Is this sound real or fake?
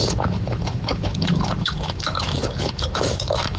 fake